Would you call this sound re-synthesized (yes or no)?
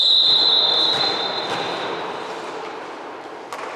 no